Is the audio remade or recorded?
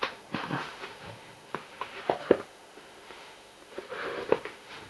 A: remade